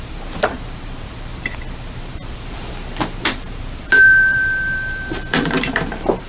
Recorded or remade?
remade